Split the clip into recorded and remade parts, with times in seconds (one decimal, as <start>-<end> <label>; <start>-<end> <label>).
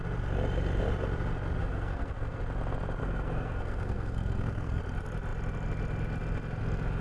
0.0-1.6 recorded; 1.6-2.4 remade; 2.4-3.0 recorded; 3.0-4.8 remade; 4.8-7.0 recorded